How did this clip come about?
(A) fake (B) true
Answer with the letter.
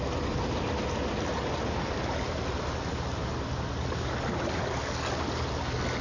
B